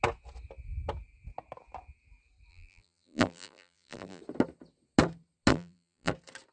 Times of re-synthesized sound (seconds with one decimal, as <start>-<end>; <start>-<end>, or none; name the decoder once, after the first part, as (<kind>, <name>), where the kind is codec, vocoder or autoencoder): 2.5-4.2 (vocoder, BigVGAN v2); 5.5-6.1